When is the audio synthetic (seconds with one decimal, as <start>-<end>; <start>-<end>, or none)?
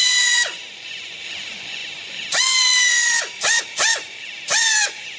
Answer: 0.0-5.2